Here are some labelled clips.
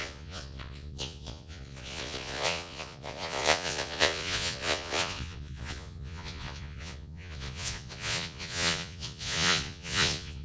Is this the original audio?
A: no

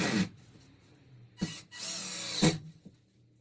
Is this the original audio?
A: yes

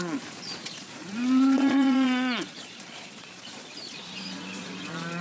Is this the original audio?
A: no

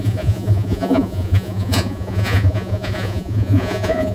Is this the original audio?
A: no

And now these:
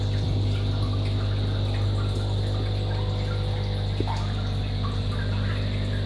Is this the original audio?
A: yes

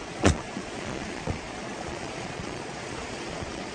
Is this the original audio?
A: no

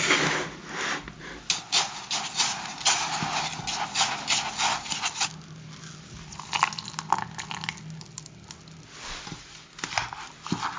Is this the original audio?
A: yes